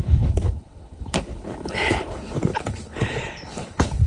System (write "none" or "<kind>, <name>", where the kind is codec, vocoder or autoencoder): codec, HILCodec